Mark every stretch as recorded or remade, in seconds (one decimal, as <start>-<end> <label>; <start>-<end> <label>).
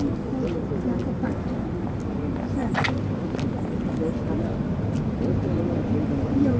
0.0-6.6 recorded